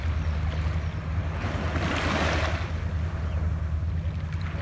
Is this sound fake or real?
real